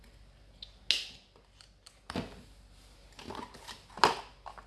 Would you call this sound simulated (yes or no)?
no